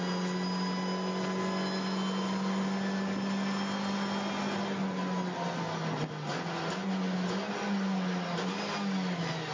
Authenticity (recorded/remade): recorded